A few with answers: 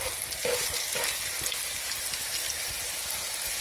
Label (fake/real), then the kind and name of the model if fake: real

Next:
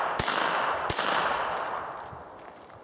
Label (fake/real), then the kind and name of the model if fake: real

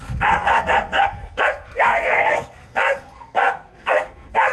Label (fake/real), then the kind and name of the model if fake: fake, codec, SNAC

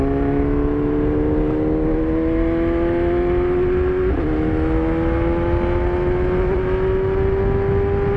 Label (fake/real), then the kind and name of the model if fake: real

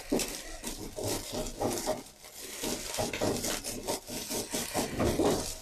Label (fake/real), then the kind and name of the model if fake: real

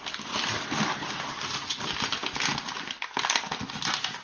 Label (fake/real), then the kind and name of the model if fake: real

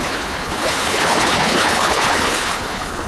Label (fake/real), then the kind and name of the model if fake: fake, codec, HILCodec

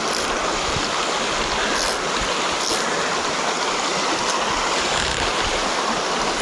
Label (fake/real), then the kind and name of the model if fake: real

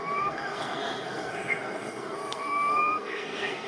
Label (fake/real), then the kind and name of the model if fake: fake, codec, SNAC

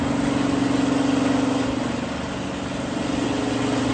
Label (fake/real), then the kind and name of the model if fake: real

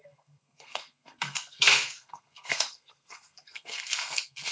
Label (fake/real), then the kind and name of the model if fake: fake, codec, SNAC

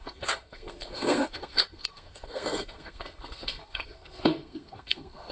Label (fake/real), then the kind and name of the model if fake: fake, codec, SNAC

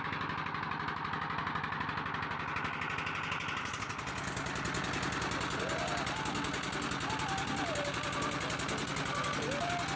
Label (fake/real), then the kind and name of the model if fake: real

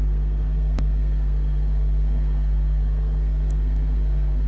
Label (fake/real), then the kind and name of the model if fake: fake, codec, SNAC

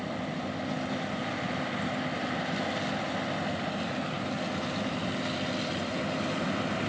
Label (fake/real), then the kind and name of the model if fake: real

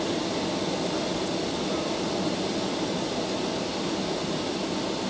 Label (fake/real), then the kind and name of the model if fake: real